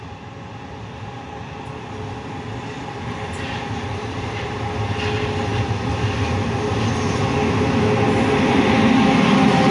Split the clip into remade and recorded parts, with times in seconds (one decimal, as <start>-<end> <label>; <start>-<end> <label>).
0.0-9.7 recorded

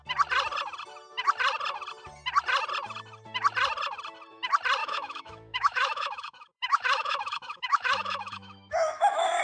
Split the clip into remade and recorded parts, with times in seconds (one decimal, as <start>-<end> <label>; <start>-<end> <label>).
0.0-4.8 recorded; 4.8-9.4 remade

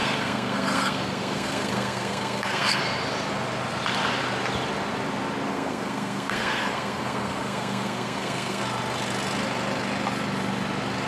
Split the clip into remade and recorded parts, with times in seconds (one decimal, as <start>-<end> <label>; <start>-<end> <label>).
0.0-2.8 remade; 2.8-5.5 recorded; 5.5-8.6 remade; 8.6-11.1 recorded

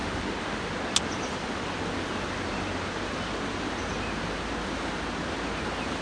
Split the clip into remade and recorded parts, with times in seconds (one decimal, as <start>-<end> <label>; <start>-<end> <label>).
0.0-6.0 recorded